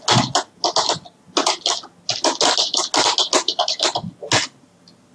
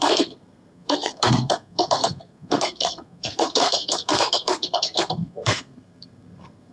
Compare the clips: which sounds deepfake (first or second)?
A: second